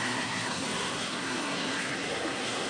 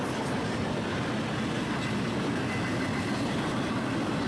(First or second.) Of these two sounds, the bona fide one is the second